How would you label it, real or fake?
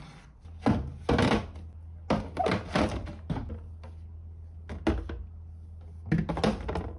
real